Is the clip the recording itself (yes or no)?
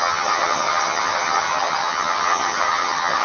no